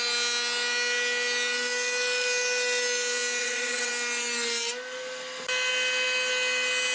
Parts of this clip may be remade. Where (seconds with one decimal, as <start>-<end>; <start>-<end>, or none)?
3.4-3.9

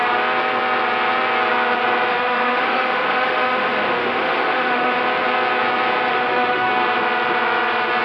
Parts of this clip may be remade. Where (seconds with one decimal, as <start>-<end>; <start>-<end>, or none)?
2.1-5.0; 6.1-6.7

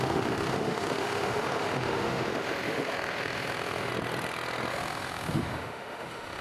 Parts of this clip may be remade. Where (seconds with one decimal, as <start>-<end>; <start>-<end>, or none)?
0.0-3.9; 4.7-6.4

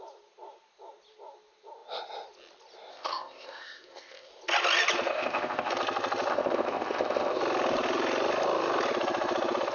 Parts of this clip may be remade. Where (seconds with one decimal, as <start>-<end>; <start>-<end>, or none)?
2.9-4.3; 5.1-5.7; 6.3-7.4

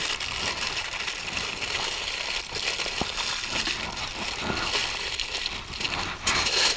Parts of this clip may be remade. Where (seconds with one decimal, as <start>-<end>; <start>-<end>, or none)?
1.5-2.0; 4.8-5.8

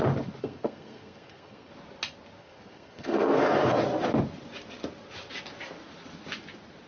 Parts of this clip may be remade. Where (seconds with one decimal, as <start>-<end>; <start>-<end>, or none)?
0.4-1.7; 2.4-3.8

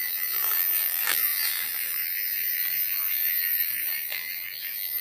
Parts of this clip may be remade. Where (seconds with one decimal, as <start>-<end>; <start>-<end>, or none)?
0.0-5.0

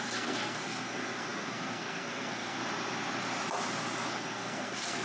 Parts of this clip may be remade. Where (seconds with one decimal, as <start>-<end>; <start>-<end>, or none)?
0.0-2.6; 4.1-5.0